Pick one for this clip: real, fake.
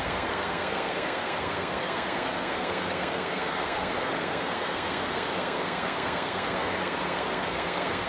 fake